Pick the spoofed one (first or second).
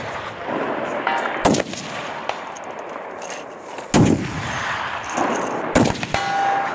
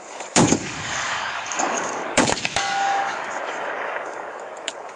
second